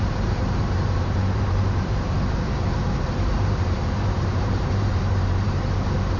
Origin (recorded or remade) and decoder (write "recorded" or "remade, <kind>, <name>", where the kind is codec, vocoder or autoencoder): remade, vocoder, BigVGAN v2